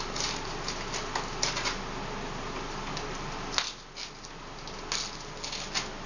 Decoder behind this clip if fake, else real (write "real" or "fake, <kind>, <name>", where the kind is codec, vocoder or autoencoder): real